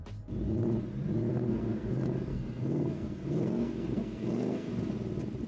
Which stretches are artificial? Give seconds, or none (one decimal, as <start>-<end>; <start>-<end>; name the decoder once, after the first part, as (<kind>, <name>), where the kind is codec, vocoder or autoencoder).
1.3-1.9 (codec, SNAC); 2.3-4.7